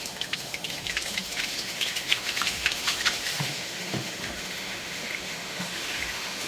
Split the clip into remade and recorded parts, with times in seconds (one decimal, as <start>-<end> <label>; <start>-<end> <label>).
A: 0.0-6.5 remade